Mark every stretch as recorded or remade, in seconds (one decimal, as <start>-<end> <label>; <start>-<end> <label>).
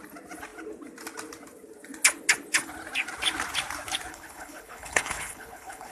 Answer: 0.0-4.1 recorded; 4.1-5.9 remade